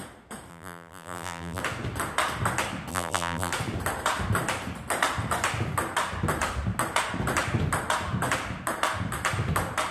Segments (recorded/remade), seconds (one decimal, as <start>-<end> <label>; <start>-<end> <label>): 0.0-0.5 recorded; 0.5-1.6 remade; 1.6-2.9 recorded; 2.9-3.5 remade; 3.5-9.9 recorded